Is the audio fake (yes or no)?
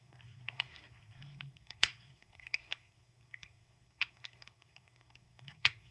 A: yes